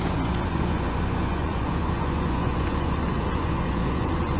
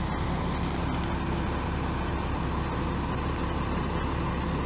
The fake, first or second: first